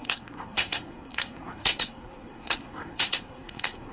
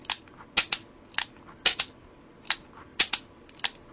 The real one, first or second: second